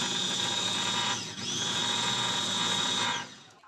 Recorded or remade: remade